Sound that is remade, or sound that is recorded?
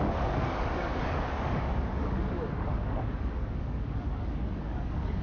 remade